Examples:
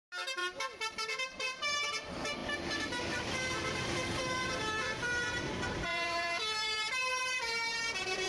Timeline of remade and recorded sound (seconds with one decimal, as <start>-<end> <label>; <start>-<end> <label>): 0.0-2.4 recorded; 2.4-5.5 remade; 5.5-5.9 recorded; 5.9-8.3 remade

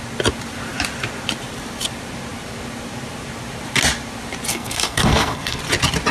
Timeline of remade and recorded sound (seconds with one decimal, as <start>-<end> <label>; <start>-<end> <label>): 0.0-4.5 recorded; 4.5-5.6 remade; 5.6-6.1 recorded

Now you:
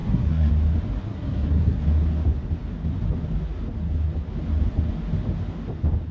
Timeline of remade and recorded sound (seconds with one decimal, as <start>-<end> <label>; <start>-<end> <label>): 0.0-0.5 remade; 0.5-1.1 recorded; 1.1-1.8 remade; 1.8-6.1 recorded

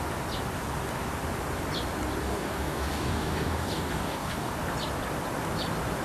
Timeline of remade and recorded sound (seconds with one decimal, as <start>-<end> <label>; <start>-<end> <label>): 0.0-2.2 recorded; 2.2-4.5 remade; 4.5-6.0 recorded

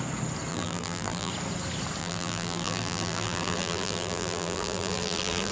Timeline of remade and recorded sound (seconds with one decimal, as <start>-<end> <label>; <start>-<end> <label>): 0.0-0.5 recorded; 0.5-1.3 remade; 1.3-2.0 recorded; 2.0-5.5 remade

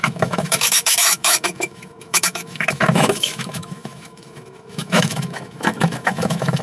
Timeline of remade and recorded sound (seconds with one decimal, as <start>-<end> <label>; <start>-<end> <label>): 0.0-6.6 remade

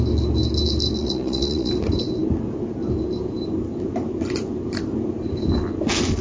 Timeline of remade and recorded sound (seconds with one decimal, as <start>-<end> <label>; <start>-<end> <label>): 0.0-1.0 recorded; 1.0-1.7 remade; 1.7-6.2 recorded

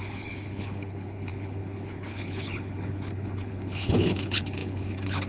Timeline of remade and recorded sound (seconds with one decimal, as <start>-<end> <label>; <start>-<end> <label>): 0.0-5.3 remade